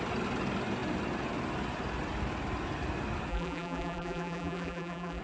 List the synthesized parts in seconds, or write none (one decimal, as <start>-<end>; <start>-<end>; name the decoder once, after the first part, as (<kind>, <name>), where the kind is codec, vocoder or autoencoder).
3.3-5.2 (vocoder, BigVGAN v2)